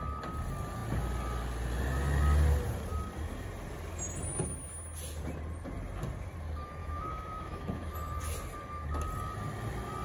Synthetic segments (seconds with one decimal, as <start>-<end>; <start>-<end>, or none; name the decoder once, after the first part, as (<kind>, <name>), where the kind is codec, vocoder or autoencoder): 6.8-7.9 (autoencoder, DAC-VAE)